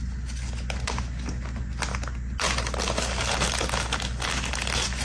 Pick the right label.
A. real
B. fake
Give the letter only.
A